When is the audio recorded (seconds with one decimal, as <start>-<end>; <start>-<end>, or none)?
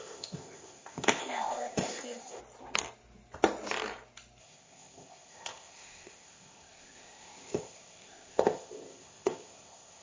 2.4-4.4